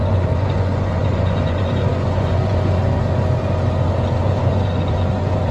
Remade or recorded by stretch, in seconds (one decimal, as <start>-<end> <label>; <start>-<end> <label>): 0.0-2.8 remade; 2.8-4.2 recorded; 4.2-5.5 remade